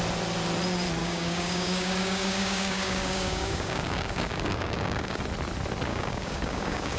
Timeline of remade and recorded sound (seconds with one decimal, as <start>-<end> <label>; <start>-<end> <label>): 0.0-1.0 recorded; 1.0-5.2 remade; 5.2-5.9 recorded; 5.9-7.0 remade